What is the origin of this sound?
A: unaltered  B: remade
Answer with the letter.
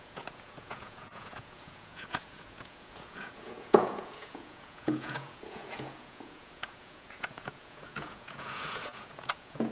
B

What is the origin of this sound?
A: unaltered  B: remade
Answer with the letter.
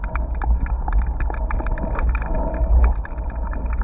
A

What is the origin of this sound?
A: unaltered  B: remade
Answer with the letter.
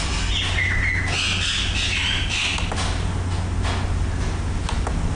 A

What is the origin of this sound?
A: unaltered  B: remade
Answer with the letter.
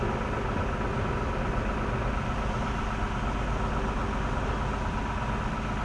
A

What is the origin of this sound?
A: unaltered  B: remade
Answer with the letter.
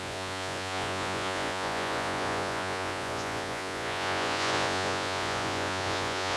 B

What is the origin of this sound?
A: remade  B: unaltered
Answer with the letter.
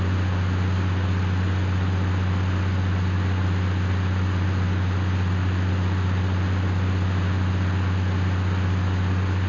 B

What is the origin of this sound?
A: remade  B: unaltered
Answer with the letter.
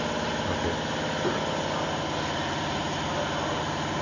B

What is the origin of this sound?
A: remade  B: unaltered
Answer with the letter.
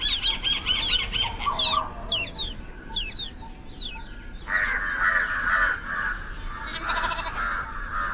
B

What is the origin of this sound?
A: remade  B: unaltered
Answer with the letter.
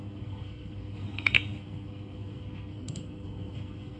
A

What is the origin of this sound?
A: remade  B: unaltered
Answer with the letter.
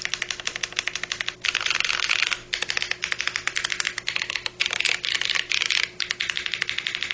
B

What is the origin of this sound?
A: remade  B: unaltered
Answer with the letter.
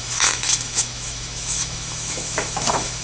A